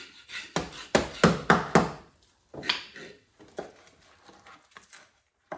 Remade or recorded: recorded